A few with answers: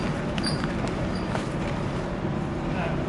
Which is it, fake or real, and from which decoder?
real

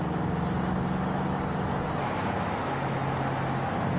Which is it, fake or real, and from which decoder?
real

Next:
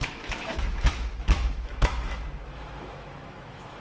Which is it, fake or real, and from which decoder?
fake, autoencoder, DAC-VAE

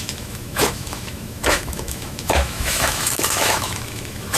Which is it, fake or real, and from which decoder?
fake, autoencoder, DAC-VAE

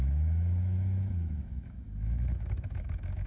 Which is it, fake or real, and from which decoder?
fake, autoencoder, DAC-VAE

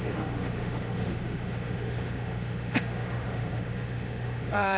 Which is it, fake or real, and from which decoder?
fake, autoencoder, DAC-VAE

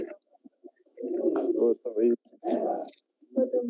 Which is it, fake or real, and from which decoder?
fake, autoencoder, DAC-VAE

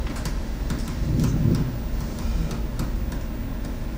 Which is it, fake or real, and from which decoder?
real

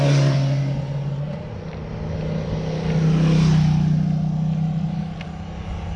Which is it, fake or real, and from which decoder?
real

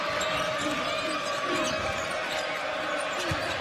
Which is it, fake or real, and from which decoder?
real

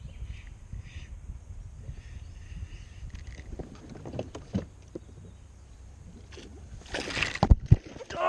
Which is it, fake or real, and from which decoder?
real